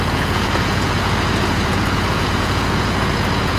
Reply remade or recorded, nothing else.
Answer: remade